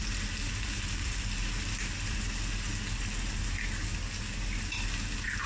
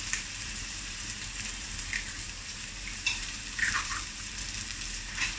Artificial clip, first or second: second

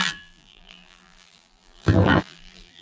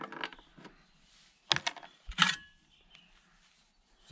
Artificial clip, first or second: first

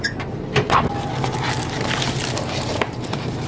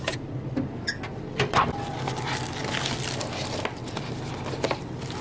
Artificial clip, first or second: first